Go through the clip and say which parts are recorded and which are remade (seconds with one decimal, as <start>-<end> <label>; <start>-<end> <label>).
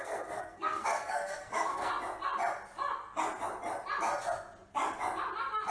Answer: 0.0-1.9 remade; 1.9-5.7 recorded